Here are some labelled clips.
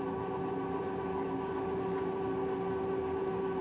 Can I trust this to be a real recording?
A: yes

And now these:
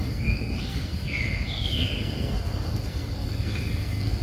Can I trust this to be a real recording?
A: no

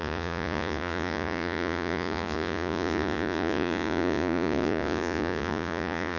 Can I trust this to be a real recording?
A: no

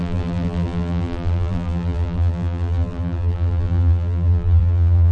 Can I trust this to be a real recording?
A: no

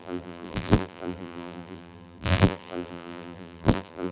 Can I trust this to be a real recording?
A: no